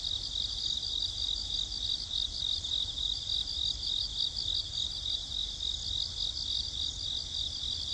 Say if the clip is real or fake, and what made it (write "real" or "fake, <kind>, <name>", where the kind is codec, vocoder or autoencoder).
real